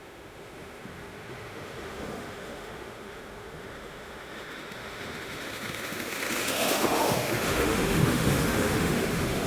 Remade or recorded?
remade